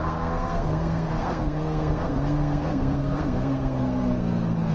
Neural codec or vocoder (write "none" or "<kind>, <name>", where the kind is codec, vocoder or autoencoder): codec, SNAC